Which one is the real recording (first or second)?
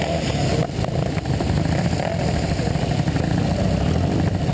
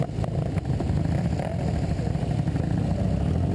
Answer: second